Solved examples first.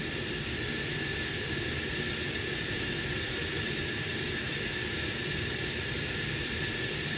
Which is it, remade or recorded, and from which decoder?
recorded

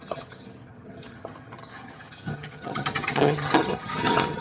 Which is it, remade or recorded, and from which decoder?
remade, vocoder, HiFi-GAN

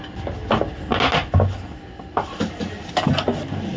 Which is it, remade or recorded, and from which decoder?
recorded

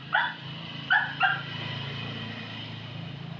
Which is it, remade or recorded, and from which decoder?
recorded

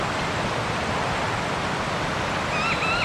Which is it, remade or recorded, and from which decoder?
recorded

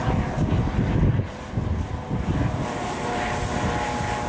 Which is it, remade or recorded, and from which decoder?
recorded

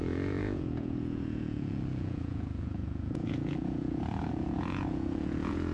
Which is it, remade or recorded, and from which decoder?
remade, vocoder, Vocos